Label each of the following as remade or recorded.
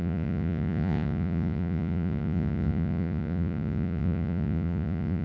remade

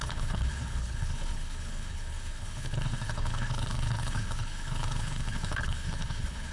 remade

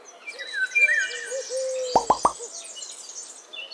recorded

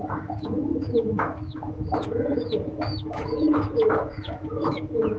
remade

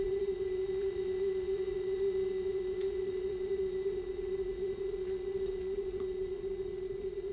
remade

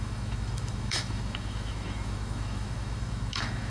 remade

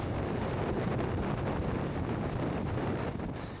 recorded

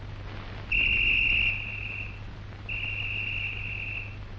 recorded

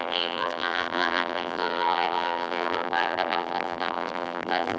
remade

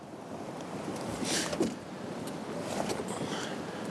recorded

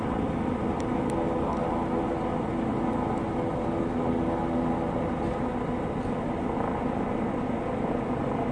recorded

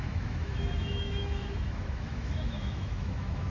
remade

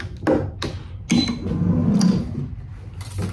recorded